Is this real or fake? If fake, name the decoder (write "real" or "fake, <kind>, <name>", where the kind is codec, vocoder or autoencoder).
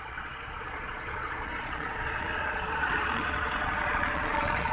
fake, vocoder, Vocos